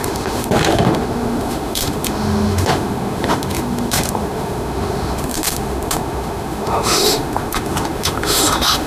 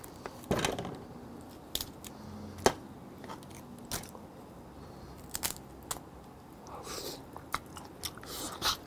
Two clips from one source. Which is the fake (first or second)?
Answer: first